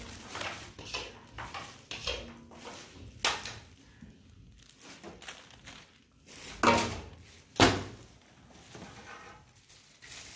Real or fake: real